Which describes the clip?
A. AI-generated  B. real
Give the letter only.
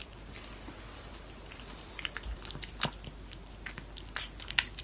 B